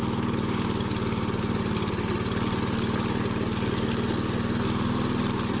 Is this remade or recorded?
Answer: recorded